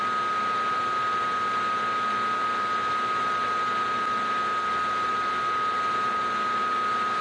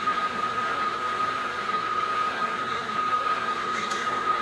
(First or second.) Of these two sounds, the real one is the first